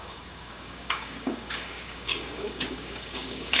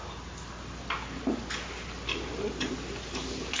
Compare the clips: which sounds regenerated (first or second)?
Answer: first